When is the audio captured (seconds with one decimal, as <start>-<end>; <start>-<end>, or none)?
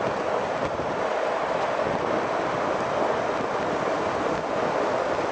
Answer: 0.0-0.6; 1.4-5.3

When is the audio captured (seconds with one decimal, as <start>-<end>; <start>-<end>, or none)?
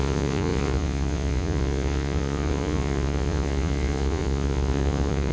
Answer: none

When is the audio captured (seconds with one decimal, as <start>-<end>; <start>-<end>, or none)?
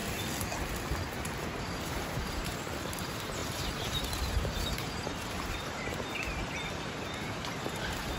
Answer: 0.0-1.4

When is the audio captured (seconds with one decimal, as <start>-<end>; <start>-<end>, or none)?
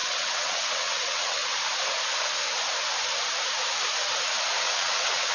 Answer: 1.4-4.6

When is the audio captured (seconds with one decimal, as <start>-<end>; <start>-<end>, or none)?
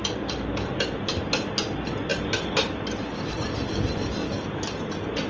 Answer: 0.0-5.3